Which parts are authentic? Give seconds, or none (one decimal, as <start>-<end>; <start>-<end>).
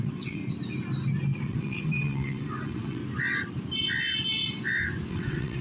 0.4-1.4; 3.0-5.1